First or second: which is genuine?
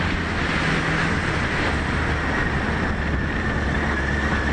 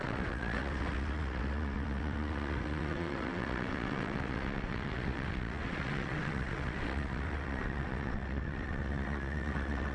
first